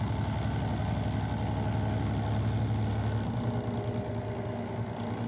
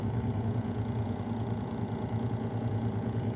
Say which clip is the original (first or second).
first